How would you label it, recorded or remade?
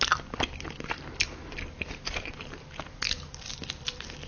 recorded